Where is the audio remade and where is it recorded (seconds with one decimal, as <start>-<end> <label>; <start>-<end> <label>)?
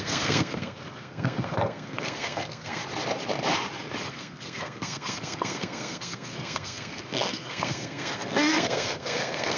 0.0-2.8 remade; 2.8-4.1 recorded; 4.1-9.6 remade